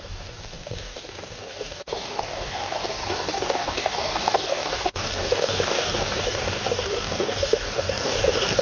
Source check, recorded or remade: remade